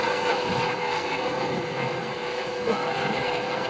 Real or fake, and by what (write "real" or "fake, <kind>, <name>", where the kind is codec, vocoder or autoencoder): fake, codec, SNAC